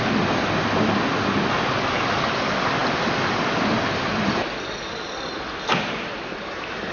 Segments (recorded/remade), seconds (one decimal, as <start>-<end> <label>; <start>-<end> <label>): 0.0-6.9 recorded